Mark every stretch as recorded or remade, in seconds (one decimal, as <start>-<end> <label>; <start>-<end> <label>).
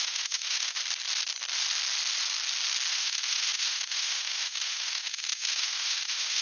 0.0-0.8 remade; 0.8-2.9 recorded; 2.9-6.4 remade